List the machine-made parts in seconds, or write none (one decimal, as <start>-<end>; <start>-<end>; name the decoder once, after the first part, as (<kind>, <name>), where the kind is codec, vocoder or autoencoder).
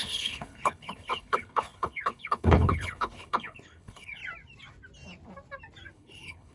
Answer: 0.0-4.2 (codec, HILCodec); 5.9-6.5